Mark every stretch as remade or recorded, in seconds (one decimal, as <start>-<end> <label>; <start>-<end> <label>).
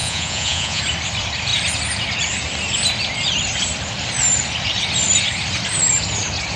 0.0-0.8 remade; 0.8-6.6 recorded